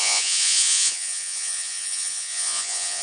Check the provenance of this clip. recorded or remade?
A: remade